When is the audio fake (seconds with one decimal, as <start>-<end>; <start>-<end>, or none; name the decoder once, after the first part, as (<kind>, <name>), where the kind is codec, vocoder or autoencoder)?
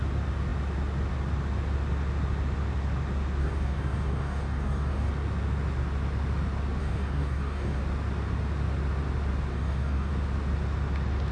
3.4-5.1 (codec, DAC); 6.8-7.8; 9.5-10.1